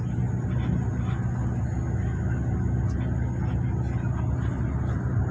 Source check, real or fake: real